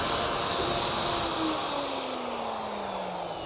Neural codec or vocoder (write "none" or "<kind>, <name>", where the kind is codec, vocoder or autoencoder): none